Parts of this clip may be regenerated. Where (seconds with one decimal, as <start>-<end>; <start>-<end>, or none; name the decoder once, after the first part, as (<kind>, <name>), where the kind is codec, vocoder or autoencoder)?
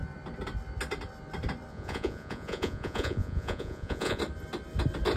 1.7-4.2 (vocoder, Vocos)